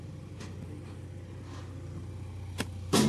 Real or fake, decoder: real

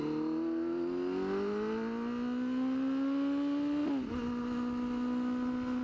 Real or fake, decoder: real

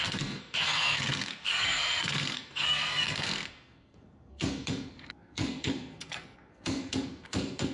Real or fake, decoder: fake, codec, SNAC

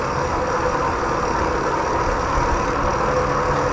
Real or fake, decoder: real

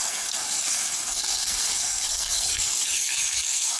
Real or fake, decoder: fake, codec, SNAC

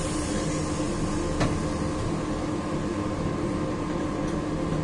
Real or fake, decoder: real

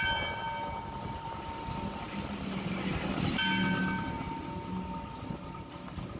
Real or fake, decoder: real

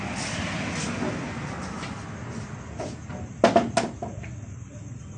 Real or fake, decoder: real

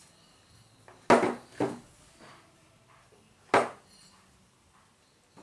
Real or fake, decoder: real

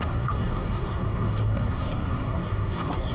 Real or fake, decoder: fake, codec, SNAC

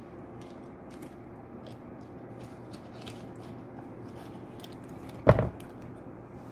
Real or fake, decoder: real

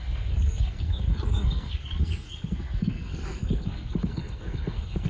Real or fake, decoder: fake, codec, SNAC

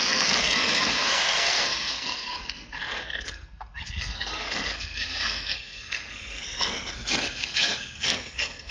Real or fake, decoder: fake, codec, SNAC